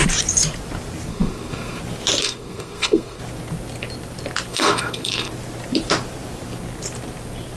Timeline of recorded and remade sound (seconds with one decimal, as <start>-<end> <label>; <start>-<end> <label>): 0.0-1.1 recorded; 1.1-1.8 remade; 1.8-2.2 recorded; 2.2-3.2 remade; 3.2-4.5 recorded; 4.5-5.3 remade; 5.3-7.6 recorded